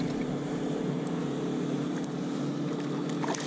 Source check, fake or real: real